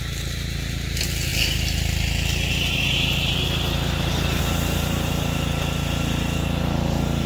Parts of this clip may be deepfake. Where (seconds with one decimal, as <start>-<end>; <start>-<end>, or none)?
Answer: 0.0-1.3; 4.4-7.3